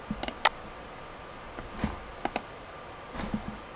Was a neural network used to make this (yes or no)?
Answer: no